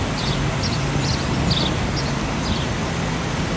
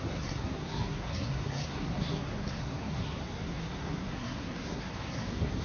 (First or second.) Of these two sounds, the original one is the first